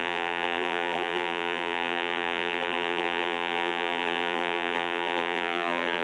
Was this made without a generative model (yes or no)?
no